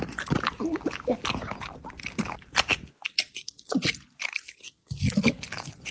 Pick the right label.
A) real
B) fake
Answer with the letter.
B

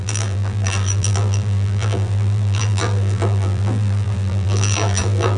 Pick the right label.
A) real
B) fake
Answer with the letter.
B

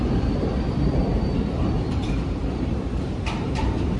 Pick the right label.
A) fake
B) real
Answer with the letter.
A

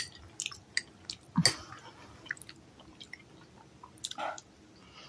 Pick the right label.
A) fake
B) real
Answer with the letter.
B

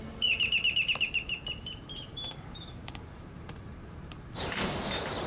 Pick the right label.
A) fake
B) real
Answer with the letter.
A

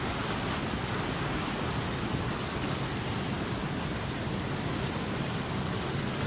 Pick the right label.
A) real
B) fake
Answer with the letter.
A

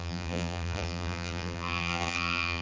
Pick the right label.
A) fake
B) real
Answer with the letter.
A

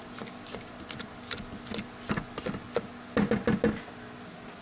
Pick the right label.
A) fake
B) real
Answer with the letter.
B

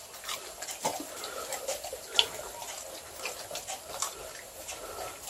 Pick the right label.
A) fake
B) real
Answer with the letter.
B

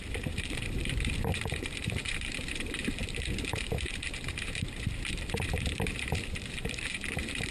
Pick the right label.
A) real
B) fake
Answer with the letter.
B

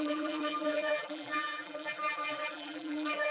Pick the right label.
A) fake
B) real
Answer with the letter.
A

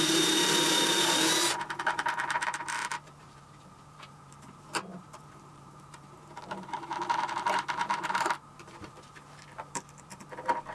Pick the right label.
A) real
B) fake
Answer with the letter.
B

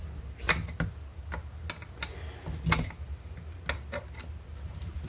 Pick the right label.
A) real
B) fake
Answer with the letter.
A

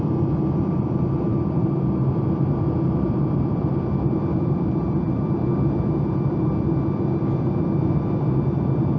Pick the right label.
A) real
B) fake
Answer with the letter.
B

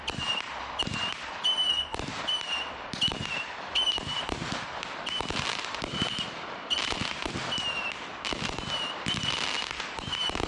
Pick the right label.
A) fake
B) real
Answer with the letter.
A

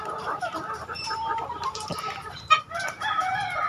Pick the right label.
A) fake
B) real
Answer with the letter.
A